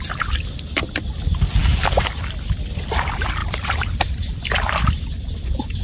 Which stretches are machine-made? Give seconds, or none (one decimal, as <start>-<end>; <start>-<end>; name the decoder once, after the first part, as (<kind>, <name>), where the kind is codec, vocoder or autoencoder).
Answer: 3.4-4.3 (vocoder, BigVGAN v2)